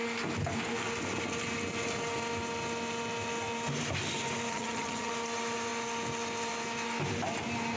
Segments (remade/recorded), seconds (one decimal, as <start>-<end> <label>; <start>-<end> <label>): 0.0-4.5 recorded; 4.5-5.1 remade; 5.1-7.8 recorded